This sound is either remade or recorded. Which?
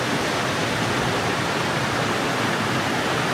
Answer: recorded